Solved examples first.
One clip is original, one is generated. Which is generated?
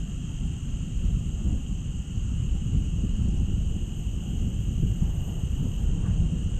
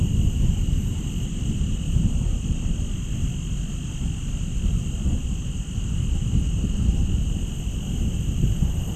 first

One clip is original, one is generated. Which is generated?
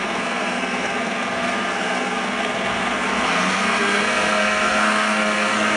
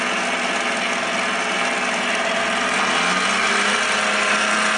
first